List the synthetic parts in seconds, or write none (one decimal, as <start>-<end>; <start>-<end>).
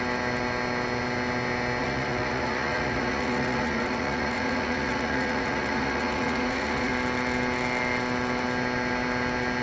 1.8-6.9